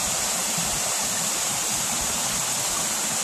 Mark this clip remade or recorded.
recorded